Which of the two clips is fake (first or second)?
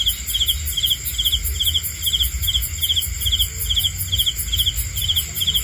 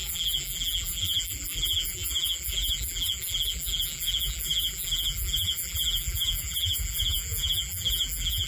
second